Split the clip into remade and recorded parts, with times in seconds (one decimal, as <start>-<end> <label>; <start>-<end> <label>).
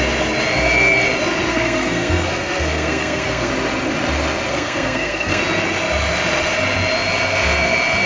0.0-1.5 recorded; 1.5-3.5 remade; 3.5-4.5 recorded; 4.5-5.4 remade; 5.4-8.1 recorded